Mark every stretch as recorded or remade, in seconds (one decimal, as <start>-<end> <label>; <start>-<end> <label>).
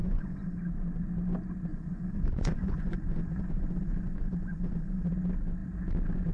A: 0.0-0.6 remade; 0.6-1.7 recorded; 1.7-5.1 remade; 5.1-6.3 recorded